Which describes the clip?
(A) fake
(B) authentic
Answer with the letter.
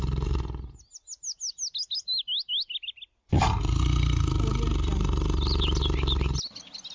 B